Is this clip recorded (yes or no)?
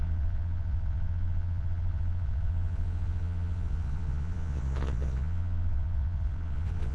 no